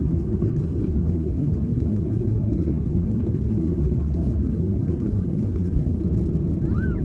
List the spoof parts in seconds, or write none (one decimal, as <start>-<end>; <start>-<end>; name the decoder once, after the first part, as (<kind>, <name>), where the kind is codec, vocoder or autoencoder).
0.0-6.0 (codec, SNAC)